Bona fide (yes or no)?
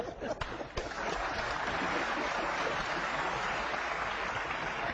yes